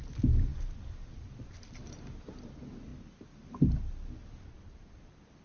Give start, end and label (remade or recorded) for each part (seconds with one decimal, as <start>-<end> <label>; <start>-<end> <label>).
0.0-5.4 recorded